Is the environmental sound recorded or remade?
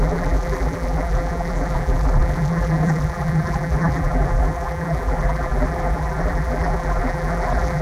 remade